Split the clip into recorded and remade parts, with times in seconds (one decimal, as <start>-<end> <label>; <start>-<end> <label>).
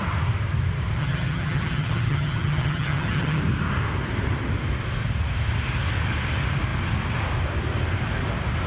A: 0.0-1.0 recorded; 1.0-3.4 remade; 3.4-8.7 recorded